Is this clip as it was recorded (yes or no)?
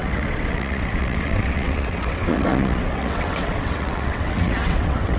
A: no